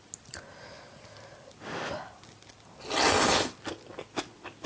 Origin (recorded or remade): recorded